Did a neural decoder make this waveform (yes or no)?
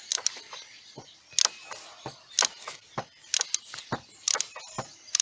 no